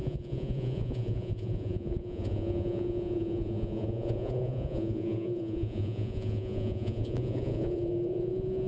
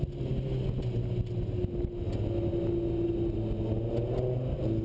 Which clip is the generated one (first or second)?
first